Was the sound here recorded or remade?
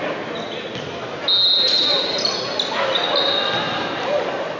recorded